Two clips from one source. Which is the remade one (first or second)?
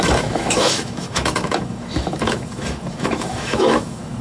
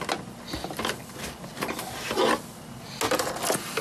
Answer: first